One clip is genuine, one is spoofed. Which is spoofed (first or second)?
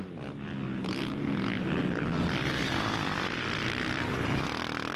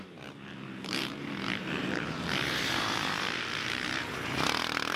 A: second